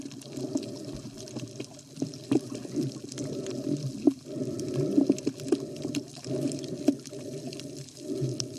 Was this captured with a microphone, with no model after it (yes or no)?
yes